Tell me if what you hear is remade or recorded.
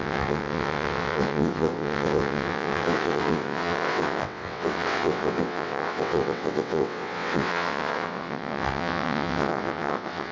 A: remade